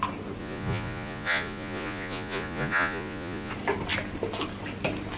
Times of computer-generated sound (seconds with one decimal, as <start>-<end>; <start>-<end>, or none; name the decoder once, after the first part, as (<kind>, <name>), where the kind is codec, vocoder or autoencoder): 0.4-3.5 (vocoder, Vocos)